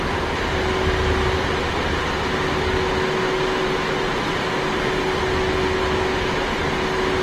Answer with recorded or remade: recorded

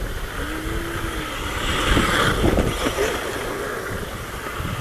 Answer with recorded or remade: recorded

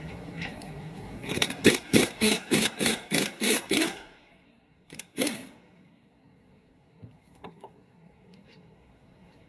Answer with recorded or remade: remade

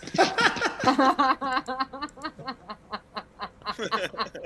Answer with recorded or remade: recorded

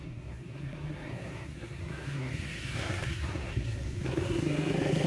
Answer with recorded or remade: remade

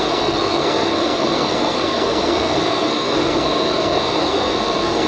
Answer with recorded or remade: remade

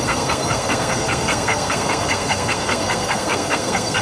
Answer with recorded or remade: remade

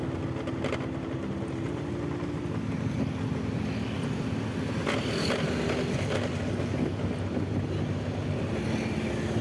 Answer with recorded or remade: recorded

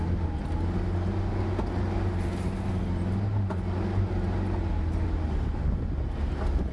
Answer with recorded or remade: recorded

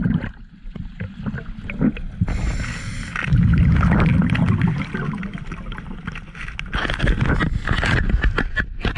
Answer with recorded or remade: recorded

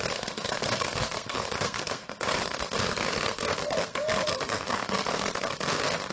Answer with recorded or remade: remade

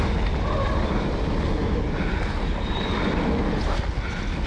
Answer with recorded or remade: recorded